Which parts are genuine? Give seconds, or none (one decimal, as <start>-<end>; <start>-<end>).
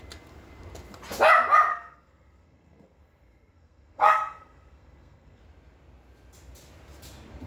0.0-1.7; 5.4-7.5